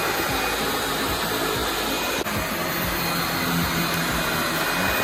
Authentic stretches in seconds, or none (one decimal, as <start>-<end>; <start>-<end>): 0.0-5.0